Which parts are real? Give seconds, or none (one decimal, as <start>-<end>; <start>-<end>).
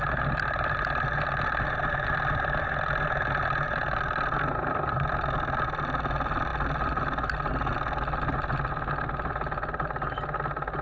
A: 0.0-10.8